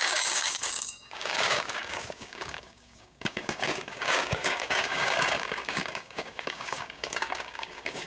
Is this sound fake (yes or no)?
yes